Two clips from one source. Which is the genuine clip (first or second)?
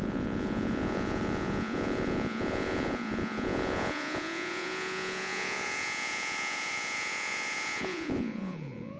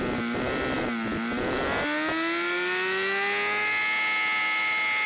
second